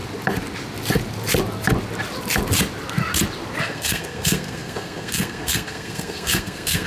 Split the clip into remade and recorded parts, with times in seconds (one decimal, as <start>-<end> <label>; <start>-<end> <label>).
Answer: 0.0-3.6 recorded; 3.6-6.9 remade